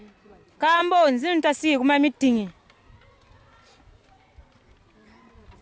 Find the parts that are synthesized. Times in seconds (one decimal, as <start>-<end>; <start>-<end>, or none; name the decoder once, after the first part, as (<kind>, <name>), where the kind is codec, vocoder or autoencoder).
none